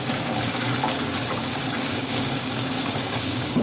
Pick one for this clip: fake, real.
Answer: fake